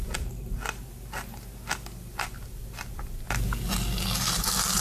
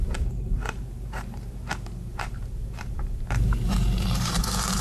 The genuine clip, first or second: first